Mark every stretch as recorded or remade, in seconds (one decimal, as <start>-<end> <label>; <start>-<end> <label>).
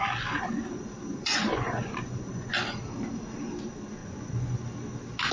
0.0-1.1 recorded; 1.1-2.5 remade; 2.5-4.0 recorded; 4.0-4.6 remade; 4.6-5.3 recorded